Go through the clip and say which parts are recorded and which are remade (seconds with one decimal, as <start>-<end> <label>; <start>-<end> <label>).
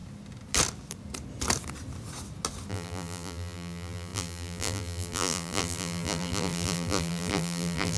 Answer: 0.0-2.7 recorded; 2.7-8.0 remade